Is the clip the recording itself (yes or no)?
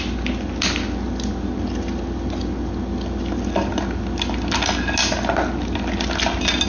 yes